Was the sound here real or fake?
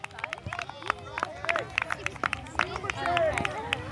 real